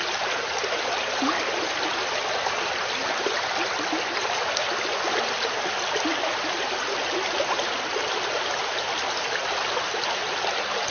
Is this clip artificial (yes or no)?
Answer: no